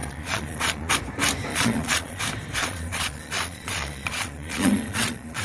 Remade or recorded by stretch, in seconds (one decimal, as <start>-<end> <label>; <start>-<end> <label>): 0.0-0.9 remade; 0.9-1.5 recorded; 1.5-2.2 remade; 2.2-2.6 recorded; 2.6-5.4 remade